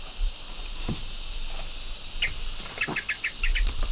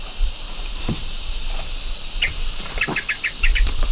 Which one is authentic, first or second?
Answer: first